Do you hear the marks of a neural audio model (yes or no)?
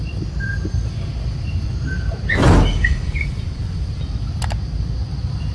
no